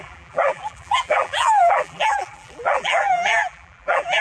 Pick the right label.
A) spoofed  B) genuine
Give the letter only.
A